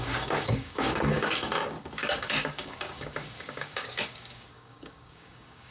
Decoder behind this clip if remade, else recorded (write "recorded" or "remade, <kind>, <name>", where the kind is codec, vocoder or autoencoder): remade, codec, DAC